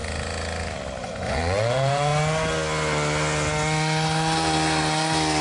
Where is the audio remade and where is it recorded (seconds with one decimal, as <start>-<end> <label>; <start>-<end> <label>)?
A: 0.0-1.0 recorded; 1.0-2.1 remade; 2.1-5.4 recorded